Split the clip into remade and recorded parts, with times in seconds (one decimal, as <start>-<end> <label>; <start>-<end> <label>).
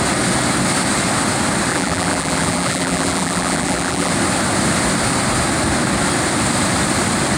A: 0.0-1.7 recorded; 1.7-4.1 remade; 4.1-7.4 recorded